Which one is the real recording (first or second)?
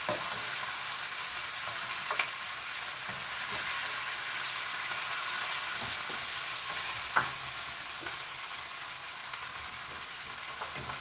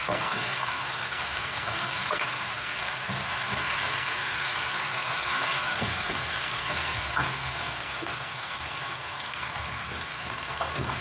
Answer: first